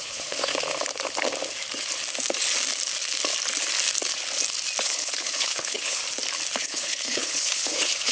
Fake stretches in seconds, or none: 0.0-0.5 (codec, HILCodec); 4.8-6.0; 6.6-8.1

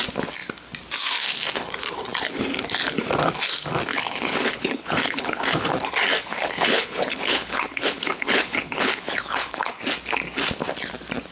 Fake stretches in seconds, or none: 3.9-5.4 (codec, HILCodec); 6.3-9.7